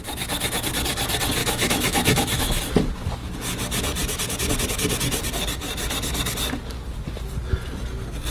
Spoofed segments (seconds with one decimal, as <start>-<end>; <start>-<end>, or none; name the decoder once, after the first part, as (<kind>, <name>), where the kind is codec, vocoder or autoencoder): 1.4-2.6 (autoencoder, DAC-VAE)